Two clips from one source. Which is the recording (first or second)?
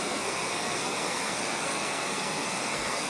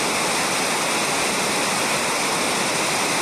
second